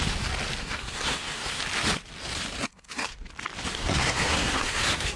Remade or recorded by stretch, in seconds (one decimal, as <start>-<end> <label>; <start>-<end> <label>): 0.0-0.6 recorded; 0.6-1.6 remade; 1.6-2.7 recorded; 2.7-3.3 remade; 3.3-3.7 recorded; 3.7-5.2 remade